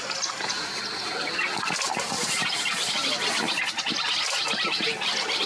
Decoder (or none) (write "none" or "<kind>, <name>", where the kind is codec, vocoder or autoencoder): none